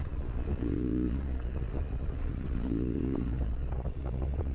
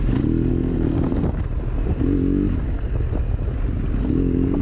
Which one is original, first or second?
second